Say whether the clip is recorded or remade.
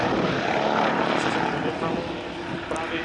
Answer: recorded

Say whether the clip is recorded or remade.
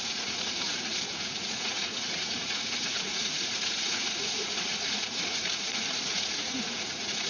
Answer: remade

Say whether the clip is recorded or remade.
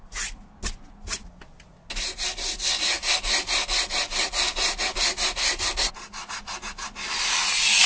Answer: recorded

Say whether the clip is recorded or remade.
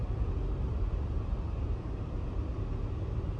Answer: recorded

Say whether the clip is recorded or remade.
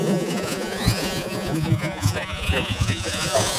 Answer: remade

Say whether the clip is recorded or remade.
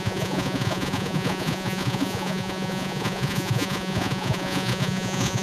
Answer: remade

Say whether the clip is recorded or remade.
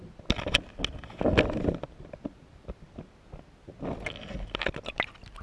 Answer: recorded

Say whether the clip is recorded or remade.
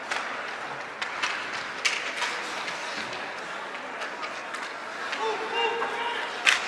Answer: recorded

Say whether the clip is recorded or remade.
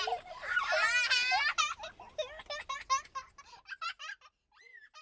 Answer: recorded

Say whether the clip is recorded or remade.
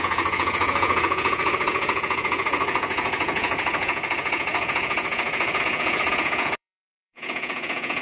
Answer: remade